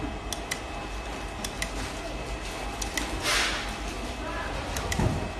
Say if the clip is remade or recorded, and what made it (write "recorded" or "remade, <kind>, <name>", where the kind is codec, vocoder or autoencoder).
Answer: recorded